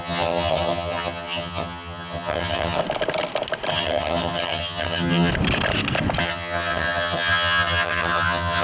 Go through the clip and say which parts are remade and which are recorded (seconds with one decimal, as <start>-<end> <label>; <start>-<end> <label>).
0.0-2.8 remade; 2.8-3.7 recorded; 3.7-5.3 remade; 5.3-6.2 recorded; 6.2-8.6 remade